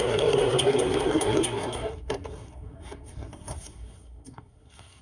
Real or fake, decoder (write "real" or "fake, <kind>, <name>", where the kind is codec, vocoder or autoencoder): fake, codec, SNAC